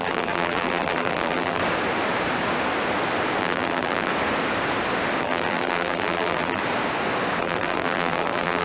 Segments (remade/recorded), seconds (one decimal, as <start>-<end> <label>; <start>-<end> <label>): 0.0-1.6 remade; 1.6-3.4 recorded; 3.4-4.1 remade; 4.1-5.2 recorded; 5.2-6.6 remade; 6.6-7.4 recorded; 7.4-8.6 remade